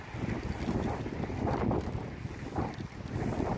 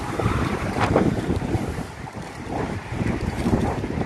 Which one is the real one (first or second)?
first